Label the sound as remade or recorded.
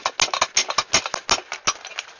recorded